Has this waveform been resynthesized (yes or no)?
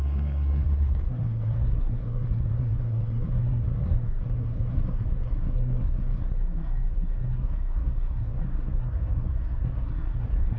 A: yes